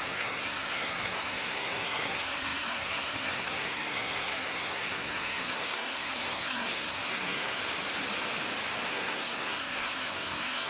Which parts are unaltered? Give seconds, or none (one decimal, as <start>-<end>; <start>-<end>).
7.6-8.9